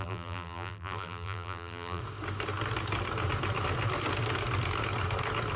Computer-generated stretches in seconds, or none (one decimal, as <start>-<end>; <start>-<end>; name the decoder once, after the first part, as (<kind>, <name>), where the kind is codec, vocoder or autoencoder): 0.0-2.0 (vocoder, BigVGAN v2)